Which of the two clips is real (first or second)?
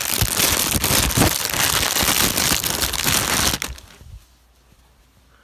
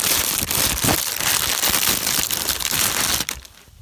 first